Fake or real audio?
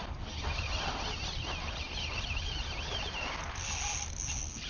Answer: real